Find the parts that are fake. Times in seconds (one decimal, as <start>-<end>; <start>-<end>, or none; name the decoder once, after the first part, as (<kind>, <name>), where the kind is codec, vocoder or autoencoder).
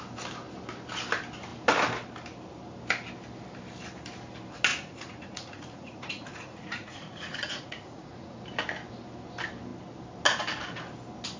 4.7-8.4 (vocoder, Vocos)